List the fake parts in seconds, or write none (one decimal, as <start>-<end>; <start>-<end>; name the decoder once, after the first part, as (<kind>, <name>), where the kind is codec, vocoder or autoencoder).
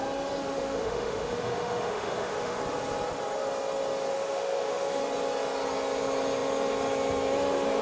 0.4-2.6 (autoencoder, DAC-VAE); 4.1-5.0